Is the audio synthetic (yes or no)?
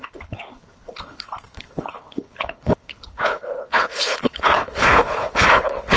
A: yes